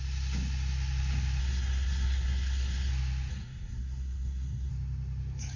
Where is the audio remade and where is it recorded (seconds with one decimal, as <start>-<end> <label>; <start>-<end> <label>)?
0.0-1.4 recorded; 1.4-2.9 remade; 2.9-3.3 recorded; 3.3-4.7 remade; 4.7-5.6 recorded